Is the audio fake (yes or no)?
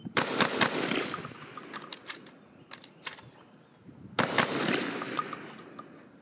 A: no